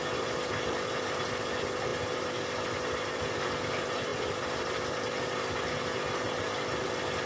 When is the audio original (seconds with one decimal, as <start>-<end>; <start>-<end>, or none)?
0.0-7.3